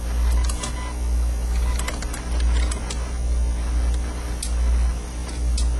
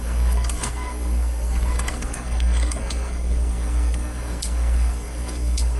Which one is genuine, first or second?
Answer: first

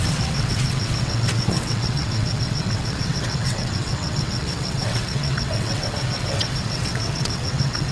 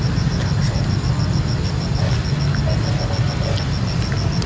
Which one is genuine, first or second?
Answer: second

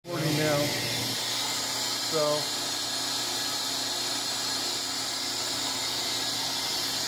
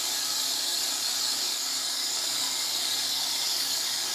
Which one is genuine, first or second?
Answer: first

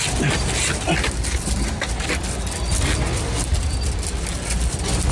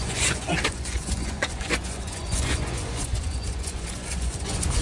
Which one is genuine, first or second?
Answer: first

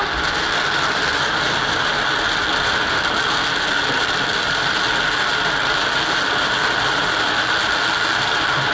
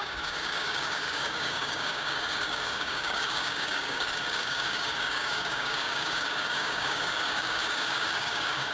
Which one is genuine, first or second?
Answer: first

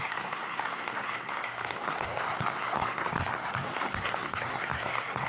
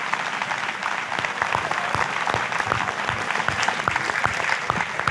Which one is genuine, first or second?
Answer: second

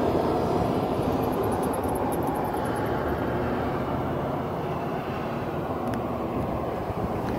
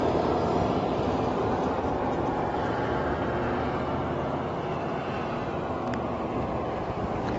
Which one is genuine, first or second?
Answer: second